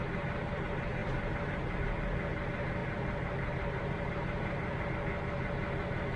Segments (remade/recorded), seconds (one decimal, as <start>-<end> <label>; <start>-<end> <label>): 0.0-1.0 recorded; 1.0-2.0 remade; 2.0-2.8 recorded; 2.8-4.9 remade; 4.9-6.2 recorded